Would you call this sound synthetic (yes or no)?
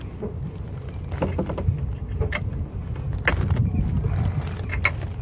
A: no